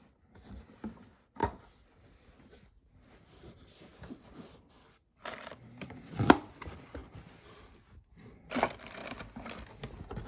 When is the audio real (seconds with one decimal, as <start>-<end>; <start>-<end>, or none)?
0.0-3.9; 6.5-10.3